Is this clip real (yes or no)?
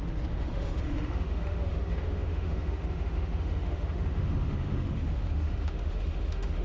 no